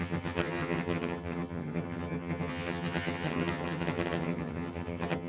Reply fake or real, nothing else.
fake